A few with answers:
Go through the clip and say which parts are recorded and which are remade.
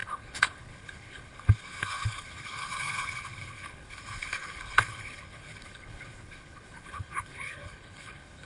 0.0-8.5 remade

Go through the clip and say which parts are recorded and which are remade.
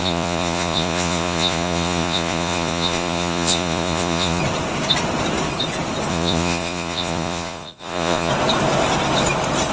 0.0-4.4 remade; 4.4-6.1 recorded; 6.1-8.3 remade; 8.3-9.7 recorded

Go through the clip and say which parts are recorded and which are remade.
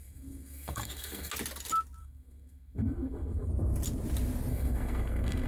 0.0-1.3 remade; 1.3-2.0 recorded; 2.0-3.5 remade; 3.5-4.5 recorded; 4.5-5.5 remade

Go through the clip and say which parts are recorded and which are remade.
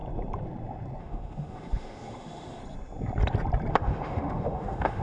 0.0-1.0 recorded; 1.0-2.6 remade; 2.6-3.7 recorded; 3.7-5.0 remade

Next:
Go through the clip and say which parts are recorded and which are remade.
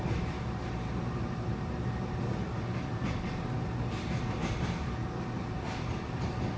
0.0-6.6 recorded